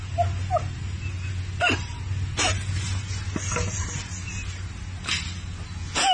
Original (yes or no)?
yes